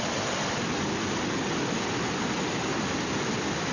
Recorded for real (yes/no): yes